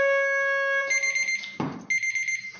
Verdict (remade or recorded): recorded